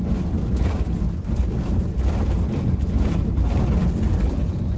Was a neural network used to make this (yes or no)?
no